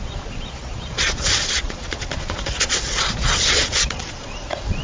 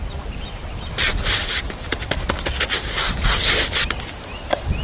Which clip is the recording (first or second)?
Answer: second